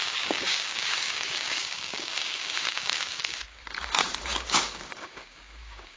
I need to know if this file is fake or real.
fake